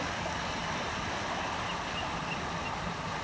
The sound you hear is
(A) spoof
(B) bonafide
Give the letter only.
B